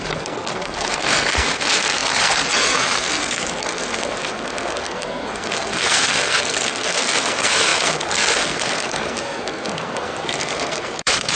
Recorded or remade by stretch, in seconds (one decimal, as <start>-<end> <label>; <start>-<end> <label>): 0.0-11.4 remade